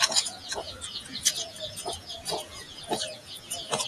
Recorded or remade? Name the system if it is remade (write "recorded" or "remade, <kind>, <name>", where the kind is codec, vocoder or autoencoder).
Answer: remade, vocoder, Vocos